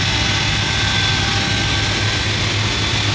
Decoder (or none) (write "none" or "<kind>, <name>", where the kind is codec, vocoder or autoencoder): none